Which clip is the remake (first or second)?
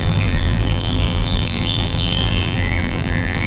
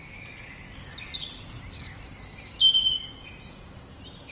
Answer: first